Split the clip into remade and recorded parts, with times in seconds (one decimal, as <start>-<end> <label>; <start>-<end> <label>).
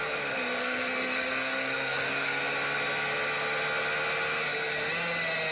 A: 0.0-0.6 recorded; 0.6-2.4 remade; 2.4-5.5 recorded